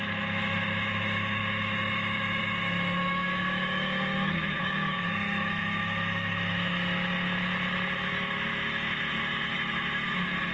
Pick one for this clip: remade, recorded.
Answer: remade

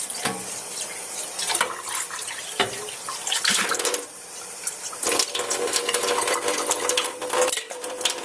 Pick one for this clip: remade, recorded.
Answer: remade